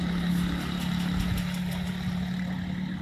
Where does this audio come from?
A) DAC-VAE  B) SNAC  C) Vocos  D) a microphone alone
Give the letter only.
D